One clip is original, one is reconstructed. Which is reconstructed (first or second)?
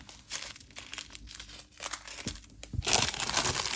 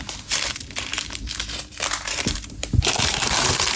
second